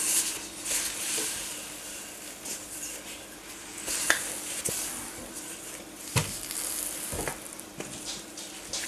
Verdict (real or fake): real